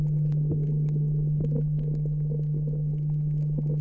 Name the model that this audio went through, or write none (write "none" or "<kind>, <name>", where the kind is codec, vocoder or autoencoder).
none